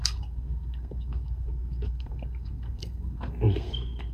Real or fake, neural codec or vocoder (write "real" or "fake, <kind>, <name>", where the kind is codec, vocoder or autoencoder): fake, codec, SNAC